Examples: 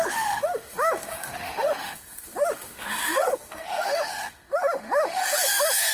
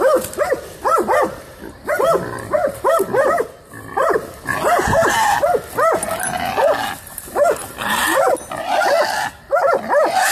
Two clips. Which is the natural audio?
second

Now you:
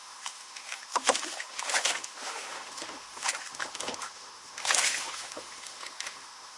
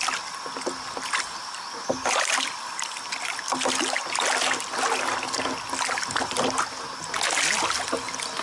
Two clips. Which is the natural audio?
second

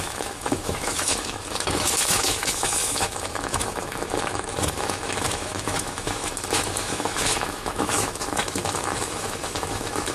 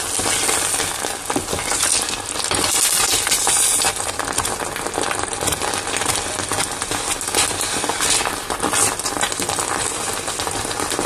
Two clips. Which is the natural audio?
second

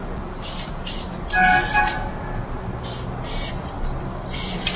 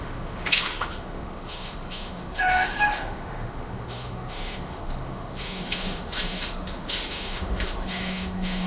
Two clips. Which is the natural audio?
first